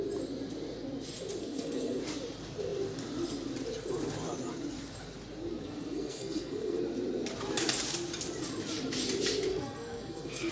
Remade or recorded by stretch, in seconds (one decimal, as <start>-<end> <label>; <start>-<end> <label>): 0.0-1.4 recorded; 1.4-2.0 remade; 2.0-5.5 recorded; 5.5-6.8 remade; 6.8-9.5 recorded; 9.5-10.5 remade